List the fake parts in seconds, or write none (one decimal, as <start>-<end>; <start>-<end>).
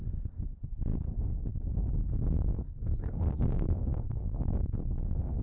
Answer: 2.0-5.4